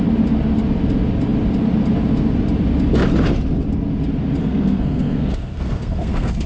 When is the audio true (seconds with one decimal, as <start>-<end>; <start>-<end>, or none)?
0.0-4.4